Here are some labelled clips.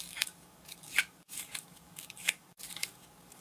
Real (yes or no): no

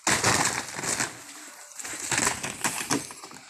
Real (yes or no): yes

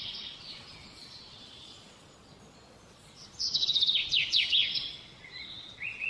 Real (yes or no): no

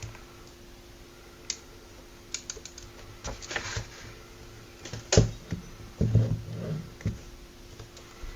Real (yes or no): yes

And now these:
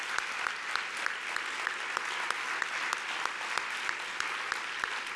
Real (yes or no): yes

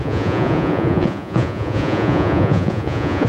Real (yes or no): no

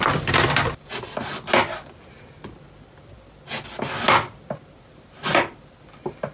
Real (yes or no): yes